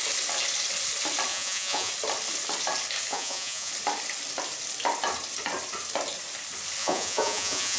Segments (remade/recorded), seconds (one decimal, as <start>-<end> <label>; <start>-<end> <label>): 0.0-1.3 recorded; 1.3-1.9 remade; 1.9-3.1 recorded; 3.1-3.7 remade; 3.7-6.8 recorded; 6.8-7.8 remade